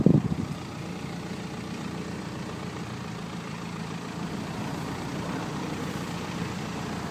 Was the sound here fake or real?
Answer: fake